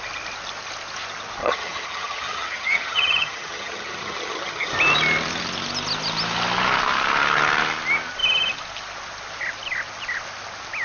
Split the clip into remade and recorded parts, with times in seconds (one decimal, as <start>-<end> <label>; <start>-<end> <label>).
0.0-1.4 recorded; 1.4-4.7 remade; 4.7-10.8 recorded